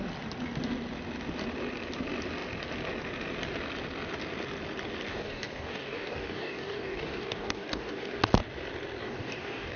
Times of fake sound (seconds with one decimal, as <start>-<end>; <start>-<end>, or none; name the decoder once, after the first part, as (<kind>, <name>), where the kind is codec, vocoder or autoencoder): 5.1-8.2 (codec, DAC); 9.0-9.8